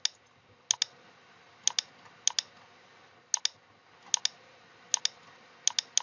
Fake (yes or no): no